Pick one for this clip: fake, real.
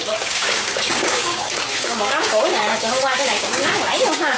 fake